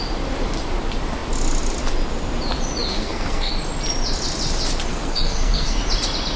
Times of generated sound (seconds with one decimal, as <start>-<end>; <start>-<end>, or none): 2.9-3.5; 4.9-5.8